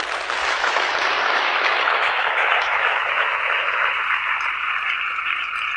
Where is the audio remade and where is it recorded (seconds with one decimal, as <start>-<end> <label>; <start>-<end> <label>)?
0.0-0.4 recorded; 0.4-3.9 remade; 3.9-5.8 recorded